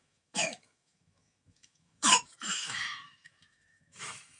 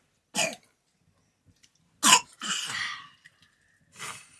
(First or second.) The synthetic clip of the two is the first